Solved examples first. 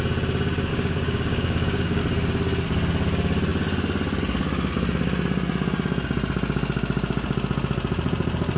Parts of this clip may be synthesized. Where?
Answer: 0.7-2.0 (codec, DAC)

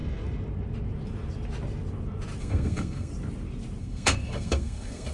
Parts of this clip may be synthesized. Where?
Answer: 2.4-3.1 (codec, SNAC); 3.8-5.1

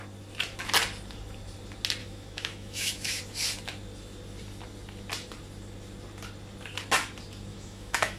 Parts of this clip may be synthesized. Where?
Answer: 2.0-3.2 (autoencoder, DAC-VAE); 7.5-8.2